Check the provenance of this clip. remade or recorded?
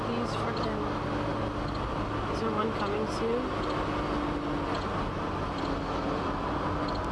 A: recorded